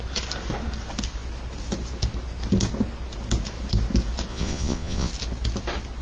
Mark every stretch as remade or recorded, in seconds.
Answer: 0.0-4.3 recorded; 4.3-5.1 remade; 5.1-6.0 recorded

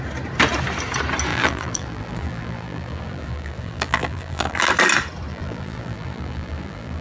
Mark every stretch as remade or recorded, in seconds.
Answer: 0.0-1.3 recorded; 1.3-4.7 remade; 4.7-5.3 recorded; 5.3-7.0 remade

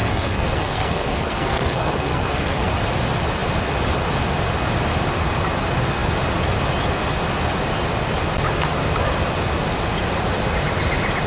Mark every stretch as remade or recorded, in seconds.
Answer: 0.0-2.7 remade; 2.7-11.3 recorded

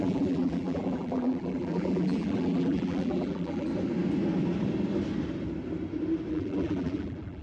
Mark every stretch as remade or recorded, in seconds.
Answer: 0.0-3.7 remade; 3.7-6.3 recorded; 6.3-7.4 remade

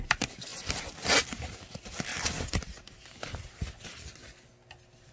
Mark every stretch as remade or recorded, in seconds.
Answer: 0.0-5.1 recorded

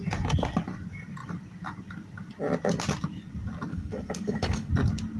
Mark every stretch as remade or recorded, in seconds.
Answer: 0.0-3.7 recorded; 3.7-4.7 remade; 4.7-5.2 recorded